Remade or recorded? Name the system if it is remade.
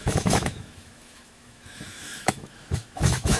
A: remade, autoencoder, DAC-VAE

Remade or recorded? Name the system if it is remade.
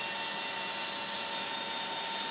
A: recorded